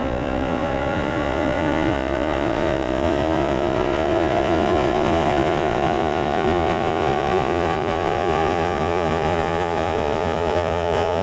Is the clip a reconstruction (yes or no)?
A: yes